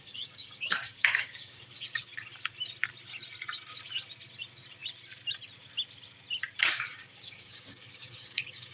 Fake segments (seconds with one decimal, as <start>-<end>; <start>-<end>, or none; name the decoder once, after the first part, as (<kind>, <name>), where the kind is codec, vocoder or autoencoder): 0.0-2.1 (codec, DAC); 6.6-8.7